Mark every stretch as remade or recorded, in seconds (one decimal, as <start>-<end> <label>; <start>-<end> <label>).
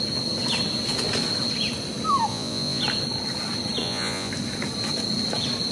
0.0-2.3 recorded; 2.3-2.8 remade; 2.8-3.8 recorded; 3.8-4.3 remade; 4.3-5.7 recorded